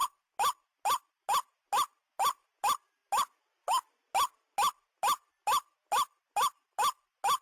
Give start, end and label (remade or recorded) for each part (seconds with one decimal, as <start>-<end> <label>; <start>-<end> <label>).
0.0-7.4 recorded